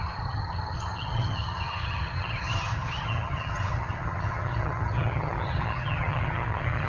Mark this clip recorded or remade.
remade